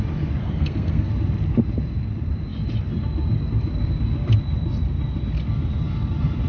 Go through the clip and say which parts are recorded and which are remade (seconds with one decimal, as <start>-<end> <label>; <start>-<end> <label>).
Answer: 0.0-0.4 recorded; 0.4-1.1 remade; 1.1-6.5 recorded